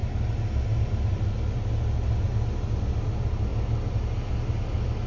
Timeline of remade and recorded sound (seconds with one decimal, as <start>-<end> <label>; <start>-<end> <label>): 0.0-5.1 recorded